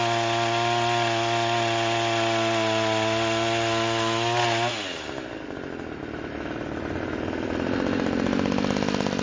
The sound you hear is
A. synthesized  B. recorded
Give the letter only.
B